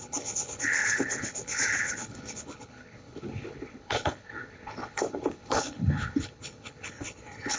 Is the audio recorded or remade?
remade